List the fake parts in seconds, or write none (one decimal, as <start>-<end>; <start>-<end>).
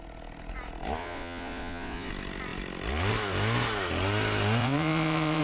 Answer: 1.0-2.1; 4.6-5.4